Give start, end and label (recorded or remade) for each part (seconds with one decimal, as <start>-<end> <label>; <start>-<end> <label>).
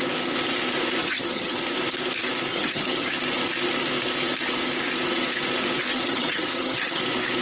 0.0-1.0 recorded; 1.0-1.6 remade; 1.6-2.5 recorded; 2.5-3.1 remade; 3.1-5.9 recorded; 5.9-7.0 remade; 7.0-7.4 recorded